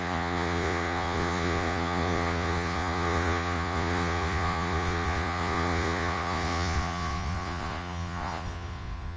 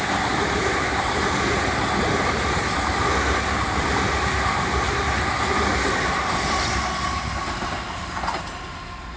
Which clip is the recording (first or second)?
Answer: second